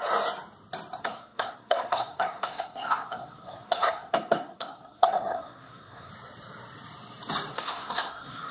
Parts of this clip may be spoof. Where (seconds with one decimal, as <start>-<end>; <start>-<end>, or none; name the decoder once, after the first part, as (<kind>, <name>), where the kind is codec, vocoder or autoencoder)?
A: 1.0-6.1 (codec, SNAC); 7.5-8.5